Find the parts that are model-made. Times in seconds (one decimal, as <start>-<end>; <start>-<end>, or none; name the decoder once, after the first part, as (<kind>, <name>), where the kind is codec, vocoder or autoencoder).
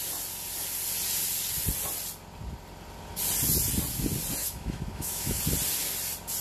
4.4-5.4 (autoencoder, DAC-VAE)